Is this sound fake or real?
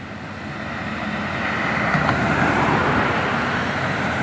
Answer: fake